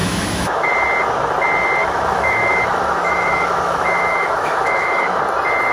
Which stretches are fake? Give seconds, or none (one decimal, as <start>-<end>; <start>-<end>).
0.0-0.7; 1.8-5.2